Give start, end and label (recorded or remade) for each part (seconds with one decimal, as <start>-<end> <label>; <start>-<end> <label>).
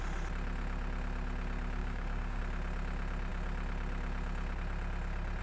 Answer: 0.0-1.8 recorded; 1.8-2.4 remade; 2.4-5.4 recorded